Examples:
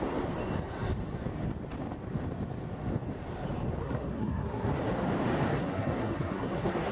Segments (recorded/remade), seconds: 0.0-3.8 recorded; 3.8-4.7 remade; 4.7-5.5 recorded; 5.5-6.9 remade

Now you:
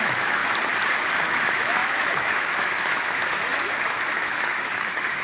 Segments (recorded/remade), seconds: 0.0-0.4 remade; 0.4-1.1 recorded; 1.1-5.2 remade

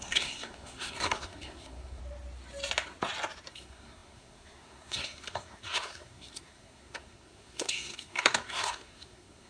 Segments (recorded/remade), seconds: 0.0-2.0 remade; 2.0-3.5 recorded; 3.5-9.5 remade

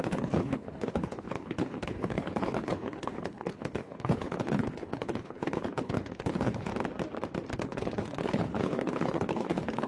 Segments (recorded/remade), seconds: 0.0-6.7 remade; 6.7-7.6 recorded; 7.6-9.9 remade

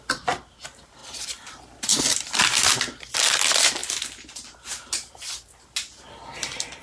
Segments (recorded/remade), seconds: 0.0-6.8 recorded